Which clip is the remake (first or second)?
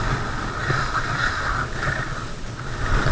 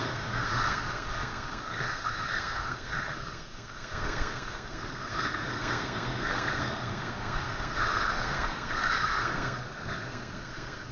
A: second